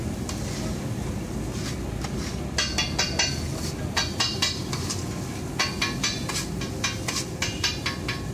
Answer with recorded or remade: recorded